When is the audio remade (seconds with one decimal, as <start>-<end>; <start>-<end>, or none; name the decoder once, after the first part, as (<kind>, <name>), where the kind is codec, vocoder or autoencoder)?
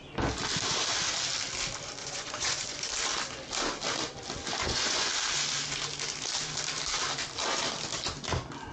2.0-2.9 (vocoder, Vocos); 4.6-5.1